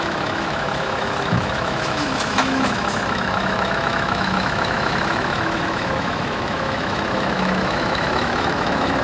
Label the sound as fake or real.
fake